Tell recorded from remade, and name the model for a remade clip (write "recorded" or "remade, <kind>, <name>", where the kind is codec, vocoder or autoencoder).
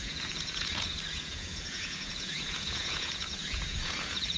remade, vocoder, Vocos